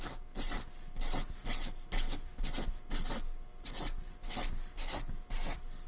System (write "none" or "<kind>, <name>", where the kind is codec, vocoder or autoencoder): none